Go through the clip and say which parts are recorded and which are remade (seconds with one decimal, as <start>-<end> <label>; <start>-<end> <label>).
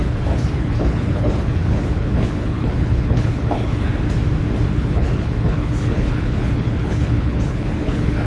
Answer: 0.0-3.9 remade; 3.9-4.7 recorded; 4.7-8.3 remade